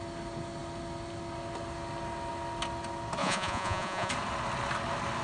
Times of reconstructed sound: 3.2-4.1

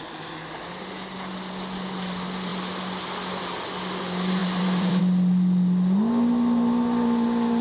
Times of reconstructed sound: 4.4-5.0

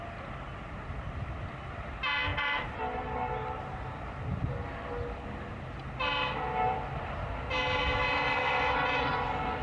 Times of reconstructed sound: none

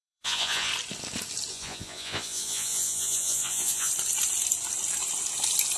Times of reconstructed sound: 0.0-0.7; 1.5-3.9